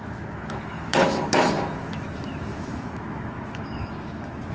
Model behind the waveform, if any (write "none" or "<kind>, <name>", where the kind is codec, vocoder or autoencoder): autoencoder, DAC-VAE